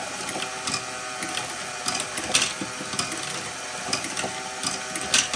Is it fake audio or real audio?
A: real